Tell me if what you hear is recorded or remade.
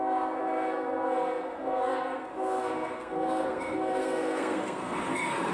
remade